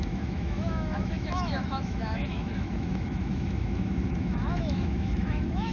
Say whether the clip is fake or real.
fake